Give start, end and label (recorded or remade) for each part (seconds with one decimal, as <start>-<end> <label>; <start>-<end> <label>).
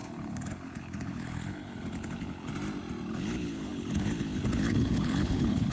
0.0-2.5 remade; 2.5-3.1 recorded; 3.1-5.7 remade